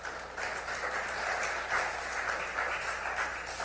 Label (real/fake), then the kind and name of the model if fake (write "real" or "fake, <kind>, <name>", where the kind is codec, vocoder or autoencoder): real